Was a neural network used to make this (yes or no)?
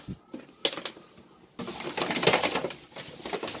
no